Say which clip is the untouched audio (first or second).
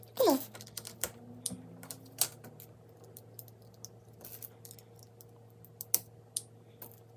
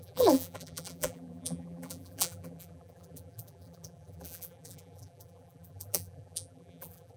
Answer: first